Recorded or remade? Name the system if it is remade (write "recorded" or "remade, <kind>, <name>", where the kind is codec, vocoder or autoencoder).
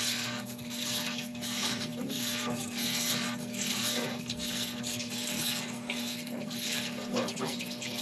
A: remade, codec, SNAC